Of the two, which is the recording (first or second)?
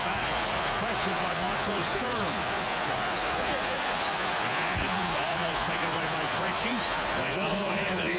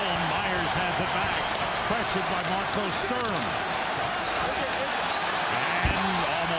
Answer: second